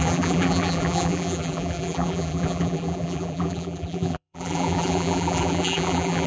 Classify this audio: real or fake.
fake